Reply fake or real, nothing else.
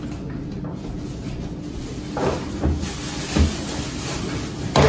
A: real